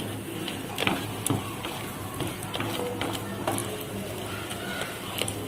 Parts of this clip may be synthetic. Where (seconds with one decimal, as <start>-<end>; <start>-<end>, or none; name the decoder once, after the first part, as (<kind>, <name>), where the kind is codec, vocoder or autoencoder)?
0.8-2.3 (vocoder, BigVGAN v2)